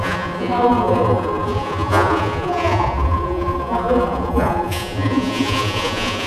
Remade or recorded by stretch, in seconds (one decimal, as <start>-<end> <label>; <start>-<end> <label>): 0.0-6.3 remade